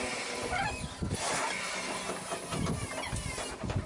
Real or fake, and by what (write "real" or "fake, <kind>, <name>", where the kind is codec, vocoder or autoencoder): real